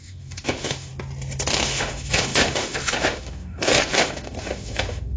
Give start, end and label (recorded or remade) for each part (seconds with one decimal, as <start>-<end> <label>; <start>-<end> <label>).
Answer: 0.0-0.9 remade; 0.9-1.5 recorded; 1.5-5.2 remade